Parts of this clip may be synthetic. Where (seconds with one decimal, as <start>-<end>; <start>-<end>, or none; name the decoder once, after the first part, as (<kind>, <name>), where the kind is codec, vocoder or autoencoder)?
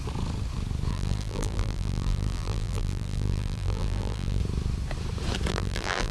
0.9-4.4 (vocoder, BigVGAN v2); 5.5-6.1